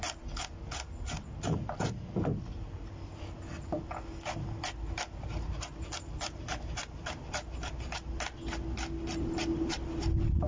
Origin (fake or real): real